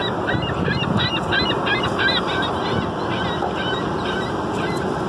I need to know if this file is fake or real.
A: real